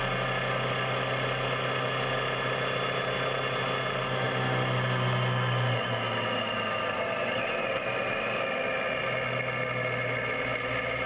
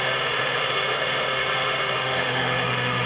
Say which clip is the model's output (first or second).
second